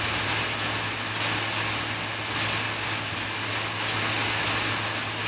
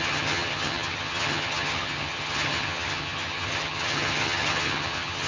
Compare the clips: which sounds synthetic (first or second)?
second